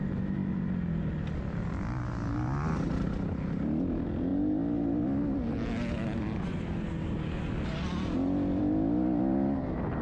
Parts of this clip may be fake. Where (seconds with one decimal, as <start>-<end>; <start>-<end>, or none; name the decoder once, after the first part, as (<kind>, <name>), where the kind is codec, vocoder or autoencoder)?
none